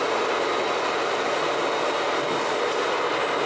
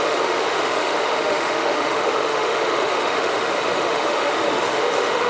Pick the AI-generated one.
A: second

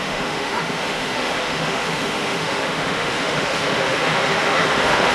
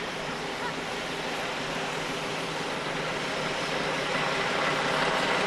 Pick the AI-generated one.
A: first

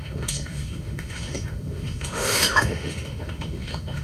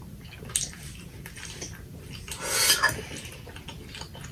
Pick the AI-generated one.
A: first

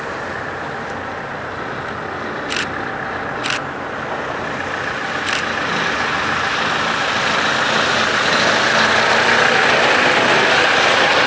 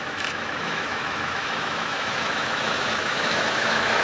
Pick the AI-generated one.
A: second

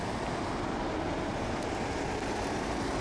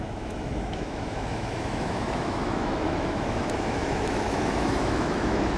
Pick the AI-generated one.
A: second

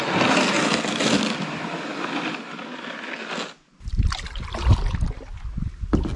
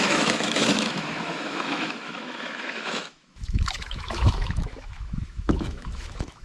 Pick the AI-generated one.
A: second